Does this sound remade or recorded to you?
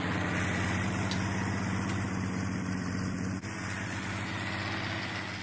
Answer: recorded